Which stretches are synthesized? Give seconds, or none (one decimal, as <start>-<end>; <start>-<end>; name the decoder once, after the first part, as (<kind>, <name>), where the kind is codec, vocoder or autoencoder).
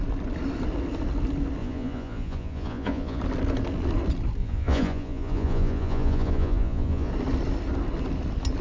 1.6-3.2 (vocoder, Vocos); 4.4-7.1